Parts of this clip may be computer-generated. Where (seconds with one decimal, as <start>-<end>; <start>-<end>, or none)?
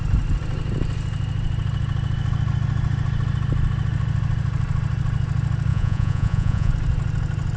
5.7-6.7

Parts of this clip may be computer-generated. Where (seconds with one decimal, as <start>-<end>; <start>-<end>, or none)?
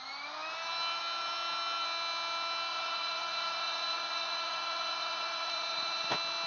2.7-6.1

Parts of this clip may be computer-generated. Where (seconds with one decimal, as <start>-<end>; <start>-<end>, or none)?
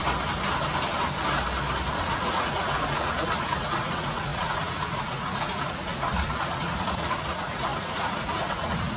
1.9-9.0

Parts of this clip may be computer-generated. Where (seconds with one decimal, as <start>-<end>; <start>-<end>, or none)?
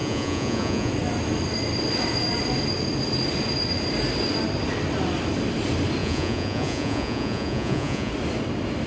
0.0-0.9; 6.0-8.1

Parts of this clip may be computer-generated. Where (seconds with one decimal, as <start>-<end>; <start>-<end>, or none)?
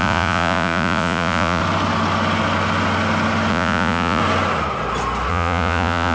0.0-1.6; 3.5-4.2; 5.3-6.1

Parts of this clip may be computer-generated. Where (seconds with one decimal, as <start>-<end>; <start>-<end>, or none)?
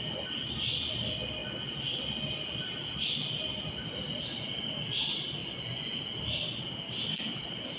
5.4-6.0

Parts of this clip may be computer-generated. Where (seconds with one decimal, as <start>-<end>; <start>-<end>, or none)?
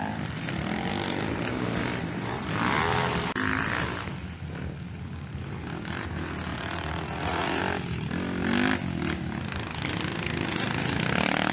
6.5-7.6